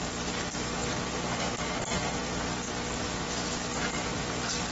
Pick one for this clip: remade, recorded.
recorded